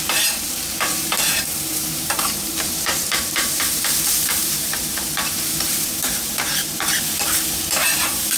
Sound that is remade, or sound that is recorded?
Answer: remade